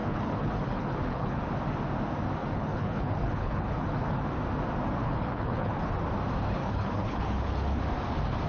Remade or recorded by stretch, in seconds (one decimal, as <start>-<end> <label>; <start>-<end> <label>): 0.0-1.4 remade; 1.4-2.4 recorded; 2.4-4.2 remade; 4.2-5.0 recorded; 5.0-5.9 remade; 5.9-6.6 recorded; 6.6-7.8 remade; 7.8-8.5 recorded